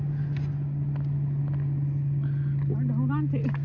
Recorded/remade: recorded